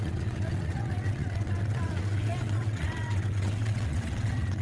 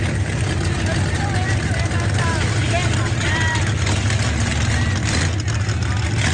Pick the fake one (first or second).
first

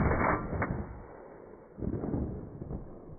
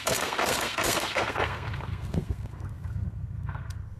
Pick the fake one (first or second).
second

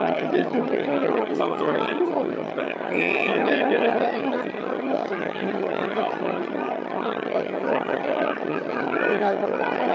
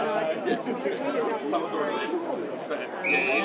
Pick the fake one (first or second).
first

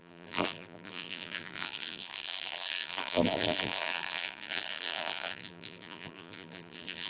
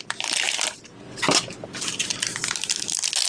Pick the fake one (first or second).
first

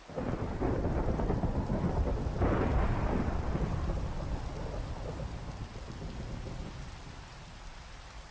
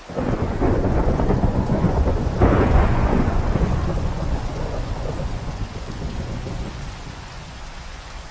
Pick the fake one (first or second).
second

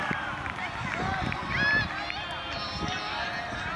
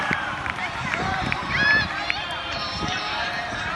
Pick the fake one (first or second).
second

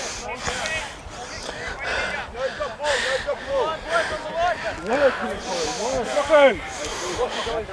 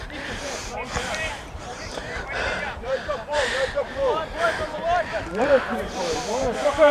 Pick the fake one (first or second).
second